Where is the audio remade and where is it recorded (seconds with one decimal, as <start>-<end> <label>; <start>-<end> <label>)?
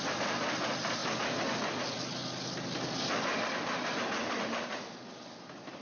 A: 0.0-5.8 recorded